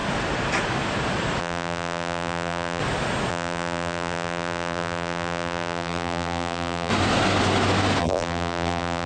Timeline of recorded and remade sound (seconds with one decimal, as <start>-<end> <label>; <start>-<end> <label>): 0.0-1.4 recorded; 1.4-2.8 remade; 2.8-3.3 recorded; 3.3-6.9 remade; 6.9-8.0 recorded; 8.0-9.1 remade